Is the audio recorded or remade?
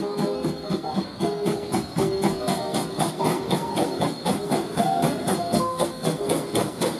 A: remade